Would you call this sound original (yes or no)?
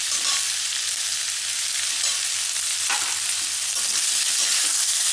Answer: yes